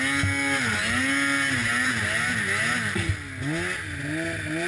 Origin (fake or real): real